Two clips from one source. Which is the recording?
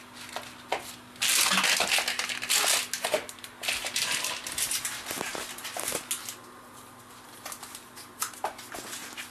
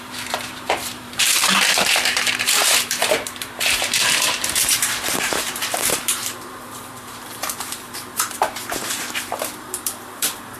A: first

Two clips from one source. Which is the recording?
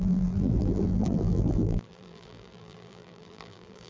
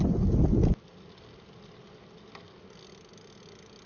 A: second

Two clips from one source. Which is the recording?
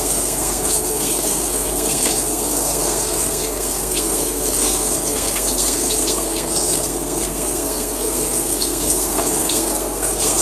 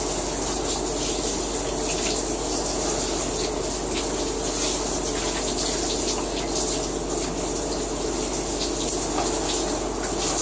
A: second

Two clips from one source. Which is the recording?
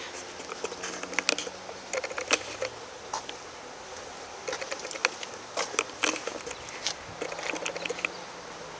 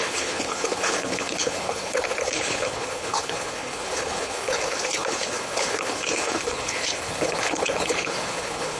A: first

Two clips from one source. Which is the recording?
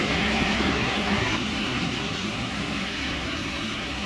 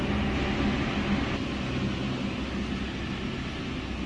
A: second